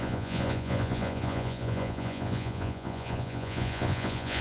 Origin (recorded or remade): remade